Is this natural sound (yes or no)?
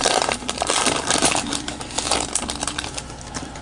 no